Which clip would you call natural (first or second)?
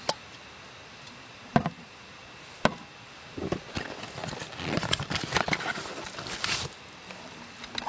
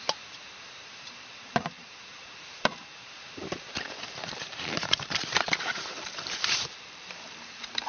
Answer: first